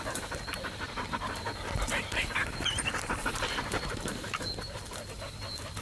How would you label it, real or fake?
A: real